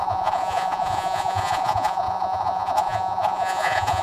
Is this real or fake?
fake